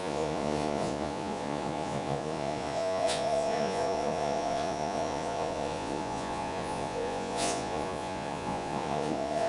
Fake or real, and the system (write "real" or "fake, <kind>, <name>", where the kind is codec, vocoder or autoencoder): fake, vocoder, Vocos